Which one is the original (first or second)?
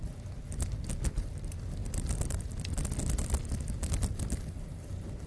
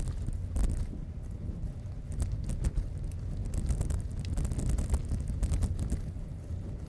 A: second